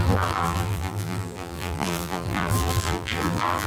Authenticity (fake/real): fake